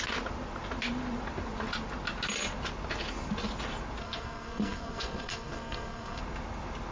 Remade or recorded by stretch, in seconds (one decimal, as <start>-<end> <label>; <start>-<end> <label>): 0.0-4.0 recorded; 4.0-6.2 remade; 6.2-6.9 recorded